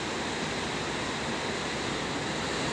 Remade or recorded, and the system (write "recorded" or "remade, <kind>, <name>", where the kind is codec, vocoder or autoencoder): recorded